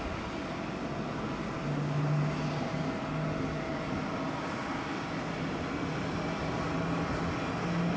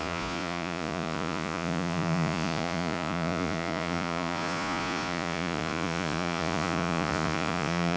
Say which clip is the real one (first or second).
first